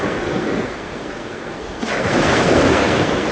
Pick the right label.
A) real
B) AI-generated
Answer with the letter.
B